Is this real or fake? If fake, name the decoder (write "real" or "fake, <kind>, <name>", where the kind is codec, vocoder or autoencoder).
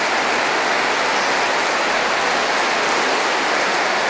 real